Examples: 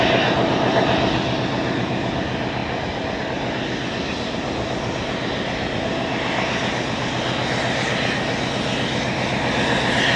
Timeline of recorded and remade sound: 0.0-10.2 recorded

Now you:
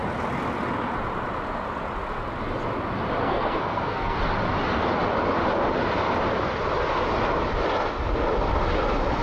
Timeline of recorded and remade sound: 0.0-3.2 recorded; 3.2-4.2 remade; 4.2-9.2 recorded

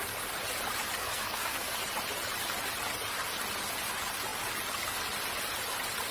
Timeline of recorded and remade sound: 0.0-1.0 recorded; 1.0-1.8 remade; 1.8-6.1 recorded

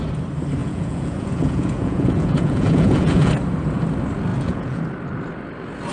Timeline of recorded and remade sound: 0.0-0.6 recorded; 0.6-3.3 remade; 3.3-4.3 recorded; 4.3-4.8 remade; 4.8-5.9 recorded

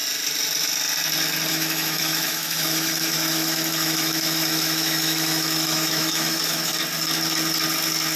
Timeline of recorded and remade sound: 0.0-1.5 recorded; 1.5-6.7 remade; 6.7-8.2 recorded

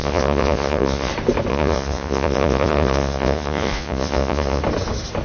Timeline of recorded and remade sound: 0.0-1.1 remade; 1.1-1.5 recorded; 1.5-4.6 remade; 4.6-5.2 recorded